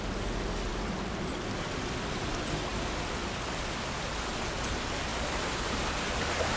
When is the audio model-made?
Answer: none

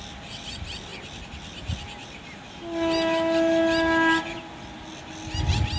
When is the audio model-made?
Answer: none

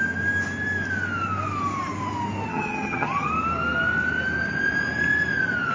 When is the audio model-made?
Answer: 2.5-3.3 (vocoder, HiFi-GAN)

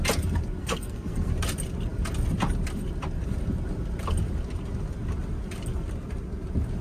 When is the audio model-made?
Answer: 0.6-1.3 (codec, SNAC)

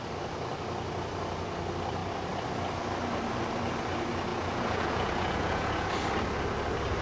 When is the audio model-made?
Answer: 4.3-5.9 (vocoder, Vocos)

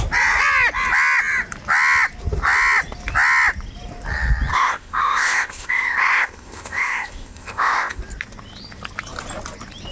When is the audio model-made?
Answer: 4.5-8.0 (codec, ZipCodec)

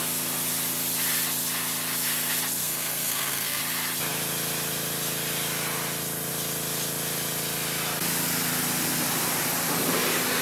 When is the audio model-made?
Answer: 2.6-3.6 (codec, SNAC)

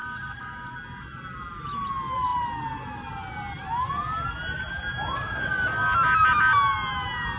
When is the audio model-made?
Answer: 0.0-0.7 (codec, DAC)